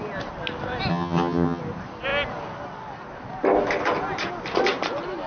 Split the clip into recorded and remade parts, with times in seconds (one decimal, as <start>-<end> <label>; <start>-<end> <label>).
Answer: 0.0-0.9 recorded; 0.9-1.6 remade; 1.6-5.3 recorded